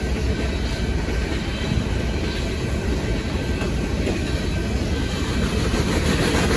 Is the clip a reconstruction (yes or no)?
no